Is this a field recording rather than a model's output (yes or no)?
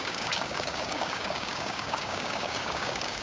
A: no